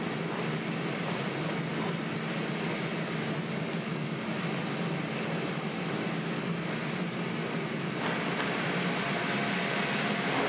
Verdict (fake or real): real